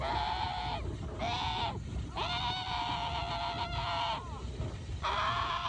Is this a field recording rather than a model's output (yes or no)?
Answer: yes